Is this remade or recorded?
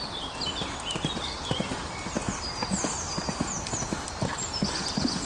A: remade